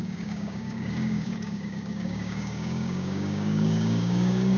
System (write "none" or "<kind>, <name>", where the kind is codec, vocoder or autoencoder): codec, DAC